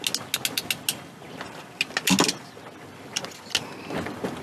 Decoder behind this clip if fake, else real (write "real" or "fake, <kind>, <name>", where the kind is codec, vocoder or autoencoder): real